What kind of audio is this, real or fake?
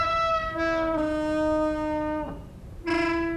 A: real